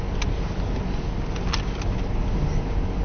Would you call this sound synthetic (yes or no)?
no